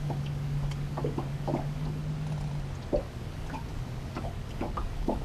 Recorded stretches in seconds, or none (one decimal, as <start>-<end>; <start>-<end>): 2.0-3.0